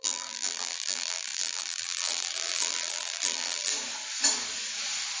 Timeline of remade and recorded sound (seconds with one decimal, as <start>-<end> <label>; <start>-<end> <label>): 0.0-3.7 remade; 3.7-5.2 recorded